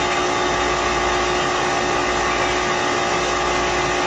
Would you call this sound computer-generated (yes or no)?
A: no